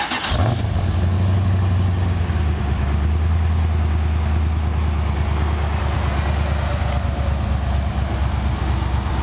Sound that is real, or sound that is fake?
real